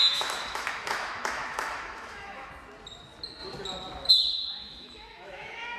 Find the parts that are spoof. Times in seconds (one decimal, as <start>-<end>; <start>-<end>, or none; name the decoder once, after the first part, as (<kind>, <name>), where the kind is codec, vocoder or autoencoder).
0.0-2.5 (autoencoder, DAC-VAE); 4.6-5.8